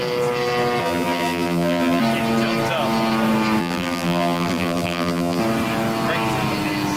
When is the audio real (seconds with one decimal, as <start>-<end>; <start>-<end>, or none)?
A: 0.0-0.8; 2.0-3.6; 5.4-7.0